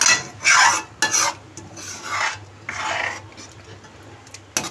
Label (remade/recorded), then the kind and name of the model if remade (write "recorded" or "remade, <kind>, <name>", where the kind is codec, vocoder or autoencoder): recorded